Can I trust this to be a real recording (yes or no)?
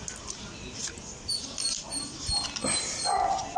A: yes